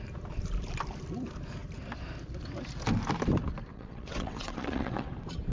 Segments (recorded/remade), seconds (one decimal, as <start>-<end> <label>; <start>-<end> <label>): 0.0-3.7 recorded; 3.7-5.1 remade; 5.1-5.5 recorded